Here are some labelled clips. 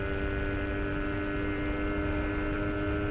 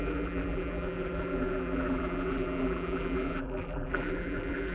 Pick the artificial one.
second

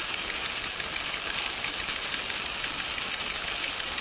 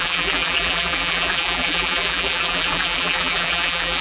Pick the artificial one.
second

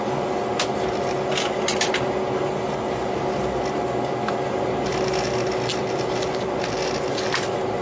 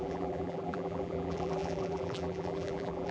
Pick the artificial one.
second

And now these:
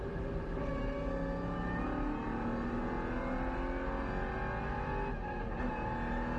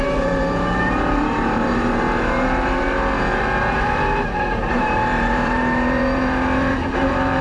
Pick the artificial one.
second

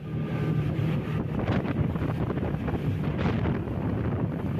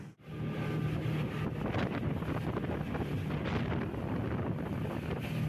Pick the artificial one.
first